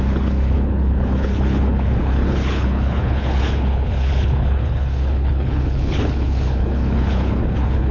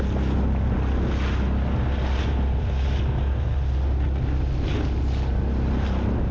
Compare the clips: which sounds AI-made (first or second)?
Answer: first